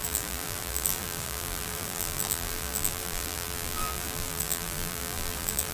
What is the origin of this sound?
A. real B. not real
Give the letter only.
B